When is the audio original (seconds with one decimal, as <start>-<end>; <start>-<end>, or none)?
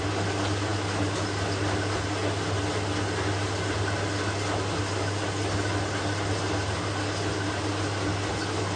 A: 0.0-8.8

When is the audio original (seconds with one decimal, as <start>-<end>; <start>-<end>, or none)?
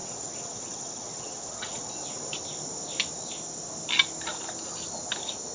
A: 1.9-5.5